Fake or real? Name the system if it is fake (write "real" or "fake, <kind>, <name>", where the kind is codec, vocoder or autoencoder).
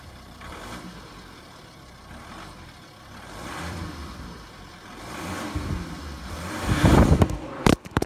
fake, vocoder, BigVGAN v2